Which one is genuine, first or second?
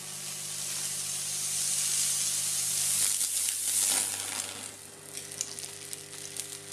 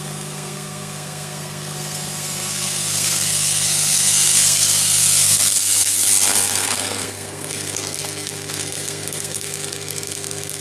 first